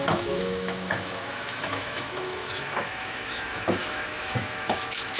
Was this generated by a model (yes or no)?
yes